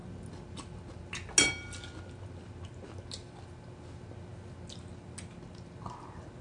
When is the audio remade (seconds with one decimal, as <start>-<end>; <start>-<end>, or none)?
none